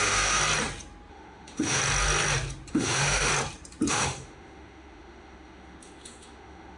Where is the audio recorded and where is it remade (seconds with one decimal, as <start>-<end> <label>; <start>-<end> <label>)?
0.0-0.4 remade; 0.4-1.1 recorded; 1.1-1.8 remade; 1.8-2.7 recorded; 2.7-3.3 remade; 3.3-3.9 recorded; 3.9-6.8 remade